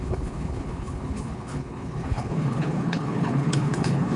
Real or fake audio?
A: fake